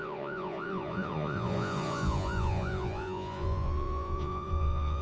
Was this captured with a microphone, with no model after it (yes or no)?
no